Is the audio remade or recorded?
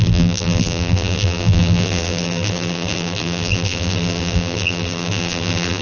remade